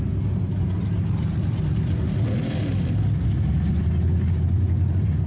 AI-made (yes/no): no